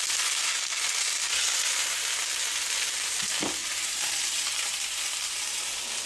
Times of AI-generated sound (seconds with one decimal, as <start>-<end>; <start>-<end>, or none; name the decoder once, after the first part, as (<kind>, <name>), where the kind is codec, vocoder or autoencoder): 3.6-4.6 (vocoder, BigVGAN v2)